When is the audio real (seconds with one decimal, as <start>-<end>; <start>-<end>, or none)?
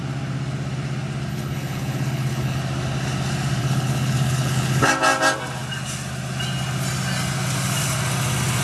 0.0-1.3; 2.6-3.6; 4.9-8.6